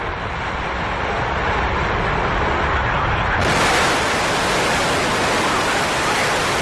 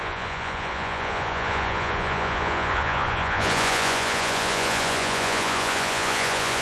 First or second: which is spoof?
second